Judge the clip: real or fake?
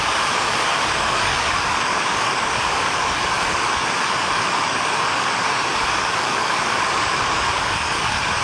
fake